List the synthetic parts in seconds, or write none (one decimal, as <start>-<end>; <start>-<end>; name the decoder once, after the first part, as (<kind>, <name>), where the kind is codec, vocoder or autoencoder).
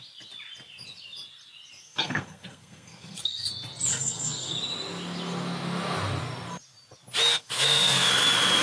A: 1.8-3.5 (codec, SNAC); 3.9-4.5; 7.3-8.1